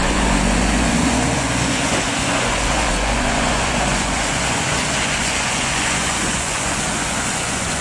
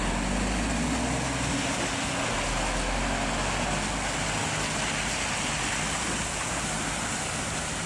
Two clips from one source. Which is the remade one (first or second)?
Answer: first